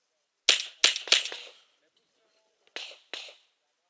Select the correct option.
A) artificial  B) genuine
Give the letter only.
B